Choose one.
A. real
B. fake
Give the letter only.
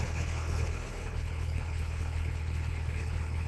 B